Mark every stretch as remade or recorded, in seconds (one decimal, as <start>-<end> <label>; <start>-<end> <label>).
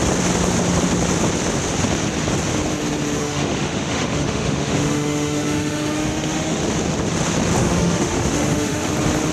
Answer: 0.0-3.2 recorded; 3.2-6.6 remade; 6.6-7.6 recorded; 7.6-8.9 remade; 8.9-9.3 recorded